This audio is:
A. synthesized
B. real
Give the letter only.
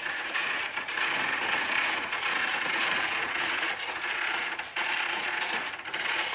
A